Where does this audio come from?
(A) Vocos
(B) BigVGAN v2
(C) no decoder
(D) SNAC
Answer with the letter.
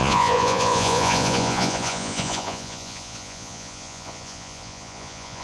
A